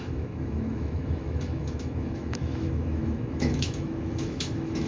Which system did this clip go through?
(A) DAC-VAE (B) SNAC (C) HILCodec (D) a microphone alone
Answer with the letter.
A